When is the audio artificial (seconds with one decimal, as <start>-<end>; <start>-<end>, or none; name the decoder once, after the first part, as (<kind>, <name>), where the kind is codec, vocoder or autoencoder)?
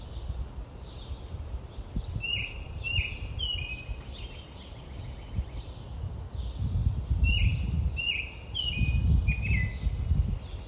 2.3-3.0 (vocoder, BigVGAN v2)